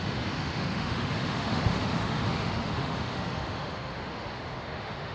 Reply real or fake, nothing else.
fake